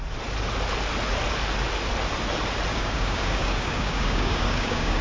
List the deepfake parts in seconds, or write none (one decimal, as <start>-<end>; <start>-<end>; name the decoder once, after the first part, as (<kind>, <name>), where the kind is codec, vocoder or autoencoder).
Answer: 2.7-5.0 (codec, DAC)